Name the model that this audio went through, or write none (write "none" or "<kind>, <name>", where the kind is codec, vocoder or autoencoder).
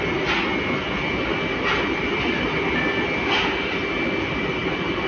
none